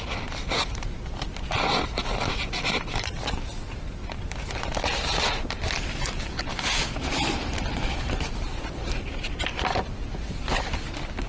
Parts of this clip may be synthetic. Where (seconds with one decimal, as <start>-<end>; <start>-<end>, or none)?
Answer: none